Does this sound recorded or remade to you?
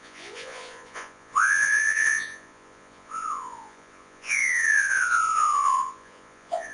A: remade